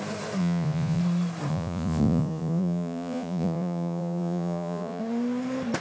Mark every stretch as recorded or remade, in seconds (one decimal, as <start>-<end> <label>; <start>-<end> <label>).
0.0-0.4 recorded; 0.4-1.0 remade; 1.0-1.5 recorded; 1.5-5.0 remade; 5.0-5.8 recorded